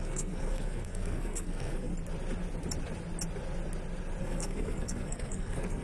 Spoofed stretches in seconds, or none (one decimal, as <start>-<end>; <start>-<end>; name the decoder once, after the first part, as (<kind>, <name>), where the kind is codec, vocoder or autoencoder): 0.0-1.9 (codec, SNAC); 4.2-5.8